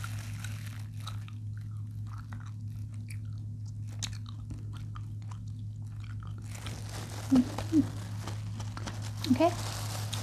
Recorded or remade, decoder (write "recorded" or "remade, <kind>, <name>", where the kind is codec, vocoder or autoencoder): recorded